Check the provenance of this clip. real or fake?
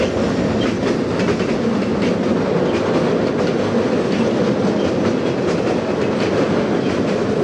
real